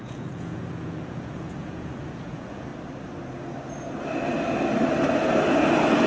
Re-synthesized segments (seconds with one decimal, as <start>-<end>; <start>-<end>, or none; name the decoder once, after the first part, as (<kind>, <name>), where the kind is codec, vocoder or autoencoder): 0.0-2.7 (vocoder, Vocos)